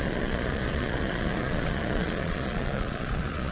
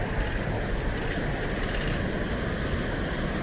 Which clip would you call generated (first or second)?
first